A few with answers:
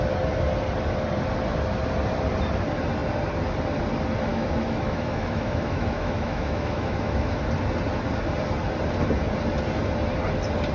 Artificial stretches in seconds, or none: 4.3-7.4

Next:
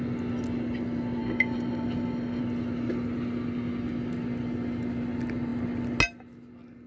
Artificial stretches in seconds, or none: 1.2-2.4

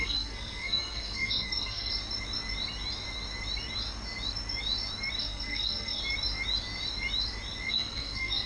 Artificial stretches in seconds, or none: 0.0-1.9; 5.2-6.0; 7.7-8.5

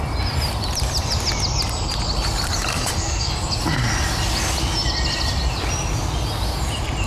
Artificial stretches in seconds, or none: 2.7-3.3

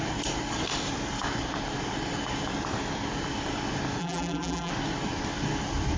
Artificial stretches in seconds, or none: 4.0-4.7

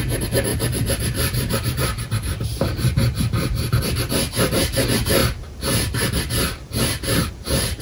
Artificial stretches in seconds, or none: 0.5-3.8

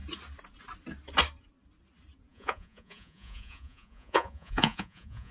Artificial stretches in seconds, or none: 2.3-5.3